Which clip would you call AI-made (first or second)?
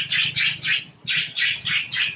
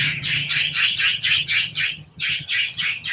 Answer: second